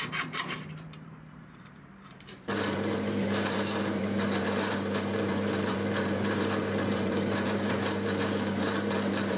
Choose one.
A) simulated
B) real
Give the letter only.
A